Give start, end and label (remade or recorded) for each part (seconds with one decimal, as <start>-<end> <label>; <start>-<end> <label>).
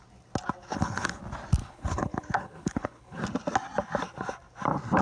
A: 0.0-0.7 recorded; 0.7-1.2 remade; 1.2-1.6 recorded; 1.6-3.2 remade; 3.2-5.0 recorded